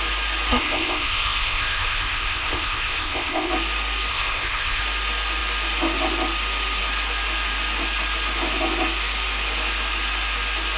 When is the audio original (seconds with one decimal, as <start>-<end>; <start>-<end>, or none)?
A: 0.0-0.5; 3.5-4.1; 4.8-10.8